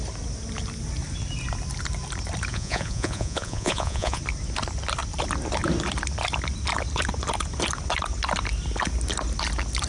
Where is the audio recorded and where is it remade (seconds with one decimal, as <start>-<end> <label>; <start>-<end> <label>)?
0.0-2.5 recorded; 2.5-4.2 remade; 4.2-9.9 recorded